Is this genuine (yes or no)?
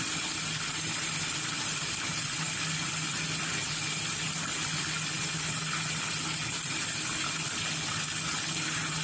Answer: yes